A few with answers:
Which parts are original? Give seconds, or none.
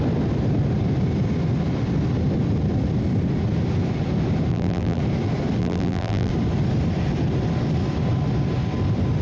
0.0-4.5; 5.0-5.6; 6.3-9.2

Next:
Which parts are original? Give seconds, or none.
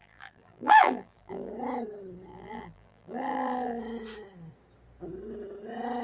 1.5-2.3; 3.8-6.0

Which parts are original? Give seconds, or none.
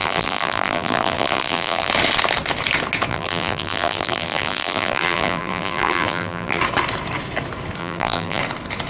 1.9-3.1; 6.6-7.8; 8.4-8.9